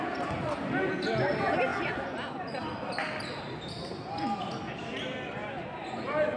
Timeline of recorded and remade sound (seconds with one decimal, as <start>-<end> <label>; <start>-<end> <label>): 0.0-6.4 recorded